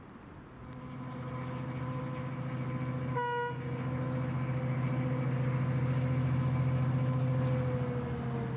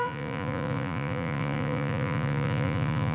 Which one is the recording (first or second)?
first